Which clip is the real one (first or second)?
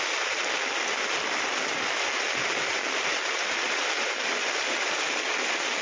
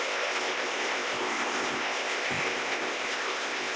first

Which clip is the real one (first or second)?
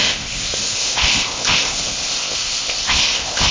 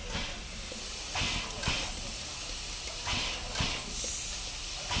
second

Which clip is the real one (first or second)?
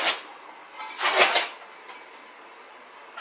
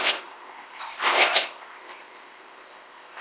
first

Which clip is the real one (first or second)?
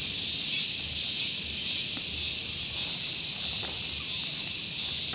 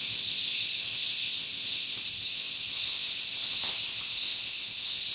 first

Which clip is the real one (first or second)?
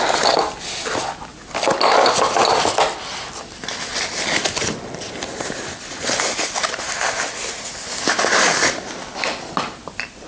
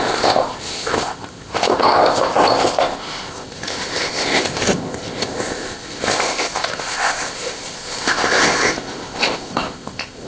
first